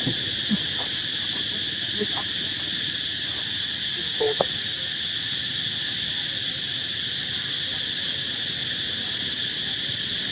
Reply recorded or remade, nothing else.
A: recorded